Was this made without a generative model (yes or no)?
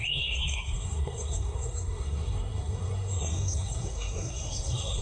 no